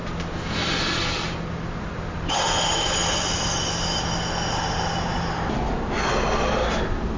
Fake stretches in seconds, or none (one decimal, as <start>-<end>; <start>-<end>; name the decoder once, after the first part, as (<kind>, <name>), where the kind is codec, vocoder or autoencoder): none